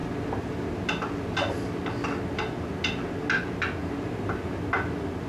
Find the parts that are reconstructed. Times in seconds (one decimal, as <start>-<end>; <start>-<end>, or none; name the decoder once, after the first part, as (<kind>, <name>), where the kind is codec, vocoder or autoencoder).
3.8-4.6 (vocoder, BigVGAN v2)